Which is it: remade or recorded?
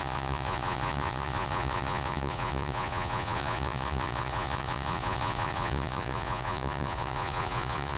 remade